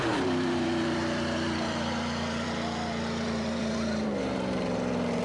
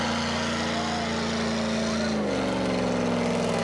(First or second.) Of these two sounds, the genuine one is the second